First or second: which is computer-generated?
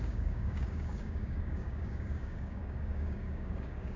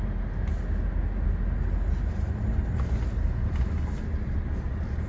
first